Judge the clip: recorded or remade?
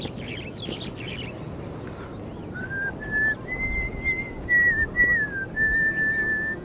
recorded